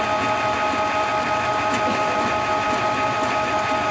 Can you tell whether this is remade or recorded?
recorded